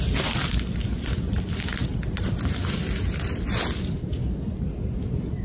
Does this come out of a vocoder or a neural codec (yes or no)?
no